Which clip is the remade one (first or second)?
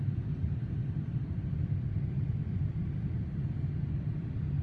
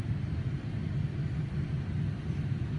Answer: first